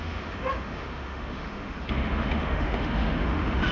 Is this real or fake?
fake